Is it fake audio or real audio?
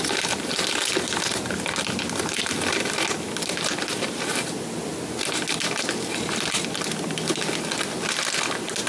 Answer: real